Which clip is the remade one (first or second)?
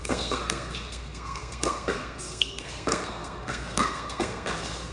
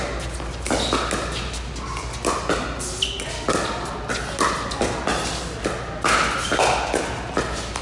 first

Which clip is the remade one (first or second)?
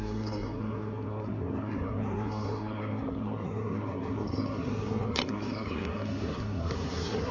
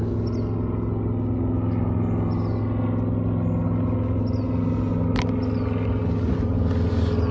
first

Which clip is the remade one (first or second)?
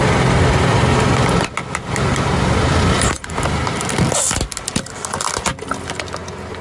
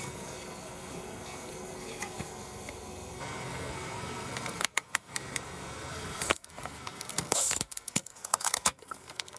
second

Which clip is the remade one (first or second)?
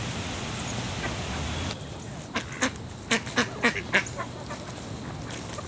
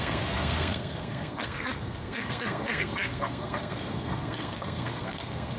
second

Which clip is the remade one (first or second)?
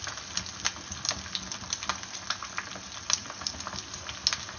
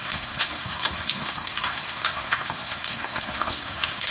second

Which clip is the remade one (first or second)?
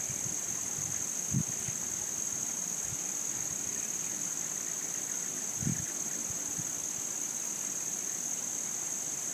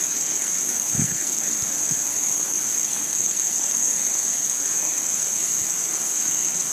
second